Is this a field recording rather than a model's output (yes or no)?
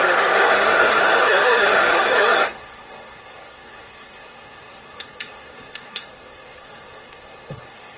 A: no